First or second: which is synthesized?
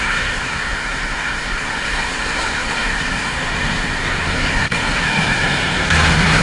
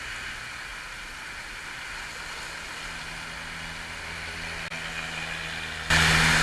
first